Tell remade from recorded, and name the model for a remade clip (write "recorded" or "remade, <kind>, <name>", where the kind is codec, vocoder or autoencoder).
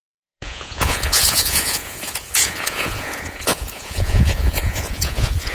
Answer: remade, vocoder, Vocos